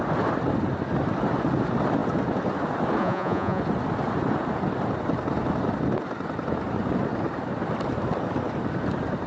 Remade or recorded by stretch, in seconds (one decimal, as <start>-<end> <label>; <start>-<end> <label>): 0.0-3.0 recorded; 3.0-3.6 remade; 3.6-9.3 recorded